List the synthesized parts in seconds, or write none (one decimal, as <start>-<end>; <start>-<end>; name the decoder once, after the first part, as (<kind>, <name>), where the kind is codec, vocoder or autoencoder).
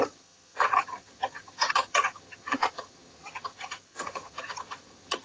0.0-5.2 (vocoder, HiFi-GAN)